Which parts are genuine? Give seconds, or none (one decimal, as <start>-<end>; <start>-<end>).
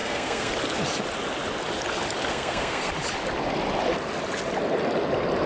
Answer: 0.5-2.3; 2.9-5.5